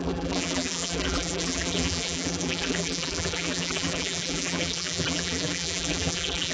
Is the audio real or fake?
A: fake